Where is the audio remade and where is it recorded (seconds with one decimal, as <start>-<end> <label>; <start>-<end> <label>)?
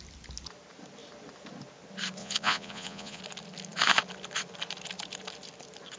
0.0-2.2 recorded; 2.2-3.2 remade; 3.2-6.0 recorded